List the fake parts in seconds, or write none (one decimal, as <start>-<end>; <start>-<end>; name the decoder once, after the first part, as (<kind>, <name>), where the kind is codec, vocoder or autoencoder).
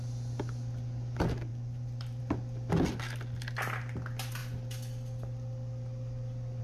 1.5-2.2 (vocoder, BigVGAN v2)